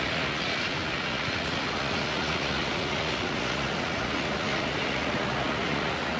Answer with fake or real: fake